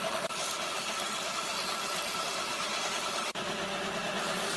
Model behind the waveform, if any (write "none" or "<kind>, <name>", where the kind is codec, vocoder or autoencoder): none